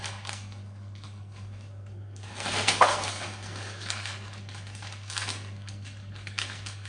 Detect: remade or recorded remade